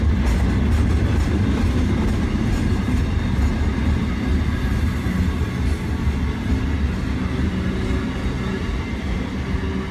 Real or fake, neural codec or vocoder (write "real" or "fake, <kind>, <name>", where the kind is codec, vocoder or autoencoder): real